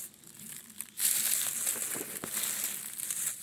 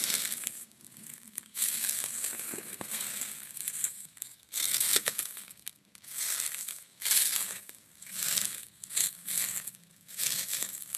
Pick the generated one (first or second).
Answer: second